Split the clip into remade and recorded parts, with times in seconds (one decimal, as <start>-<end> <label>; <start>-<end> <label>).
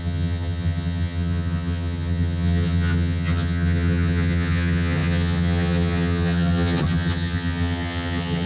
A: 0.0-8.5 remade